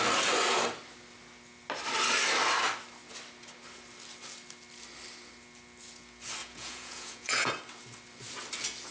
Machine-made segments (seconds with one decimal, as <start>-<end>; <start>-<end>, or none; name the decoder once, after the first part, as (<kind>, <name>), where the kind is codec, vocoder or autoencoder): 6.4-7.5 (vocoder, Vocos)